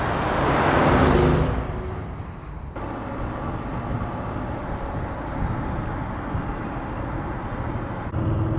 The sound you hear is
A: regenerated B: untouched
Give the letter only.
B